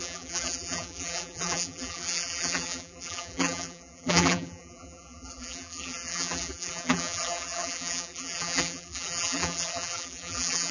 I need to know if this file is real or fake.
fake